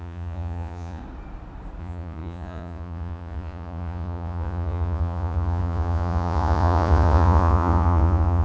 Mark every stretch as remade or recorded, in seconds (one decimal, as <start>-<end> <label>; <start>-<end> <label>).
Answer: 0.0-1.0 remade; 1.0-1.8 recorded; 1.8-8.4 remade